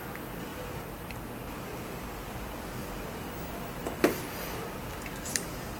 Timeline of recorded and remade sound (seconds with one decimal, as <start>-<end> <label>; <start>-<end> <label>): 0.0-5.8 recorded